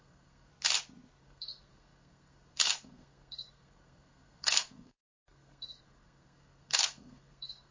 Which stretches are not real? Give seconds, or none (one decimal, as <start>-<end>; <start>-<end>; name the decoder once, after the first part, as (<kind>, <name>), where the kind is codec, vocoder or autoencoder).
0.0-0.5 (codec, SNAC); 1.2-7.7